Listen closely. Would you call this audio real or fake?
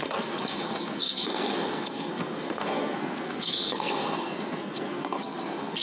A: fake